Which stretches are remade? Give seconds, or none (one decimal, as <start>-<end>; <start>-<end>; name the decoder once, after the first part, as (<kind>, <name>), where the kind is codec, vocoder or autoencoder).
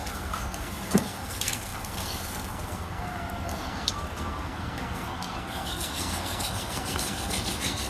0.0-7.9 (codec, SNAC)